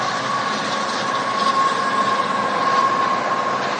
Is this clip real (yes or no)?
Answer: yes